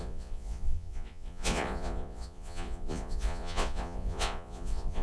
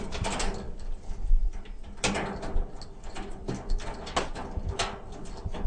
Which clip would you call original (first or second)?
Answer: second